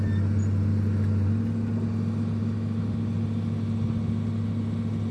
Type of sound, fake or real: real